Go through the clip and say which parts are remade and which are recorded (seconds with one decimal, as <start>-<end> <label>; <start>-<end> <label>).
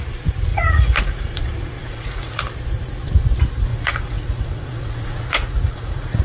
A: 0.0-0.5 recorded; 0.5-1.4 remade; 1.4-1.8 recorded; 1.8-2.4 remade; 2.4-3.7 recorded; 3.7-6.2 remade